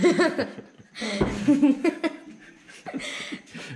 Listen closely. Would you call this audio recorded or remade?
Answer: recorded